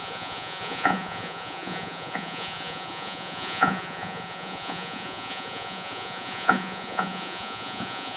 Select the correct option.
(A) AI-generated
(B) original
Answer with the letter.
A